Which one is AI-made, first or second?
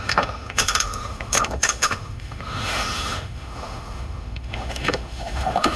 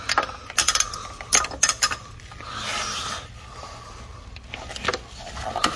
first